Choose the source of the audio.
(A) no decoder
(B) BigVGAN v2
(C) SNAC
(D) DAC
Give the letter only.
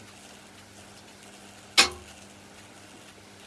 A